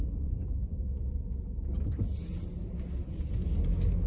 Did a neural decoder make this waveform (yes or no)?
no